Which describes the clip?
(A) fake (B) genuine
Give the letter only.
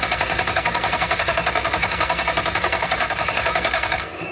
A